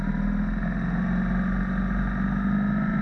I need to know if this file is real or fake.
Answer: real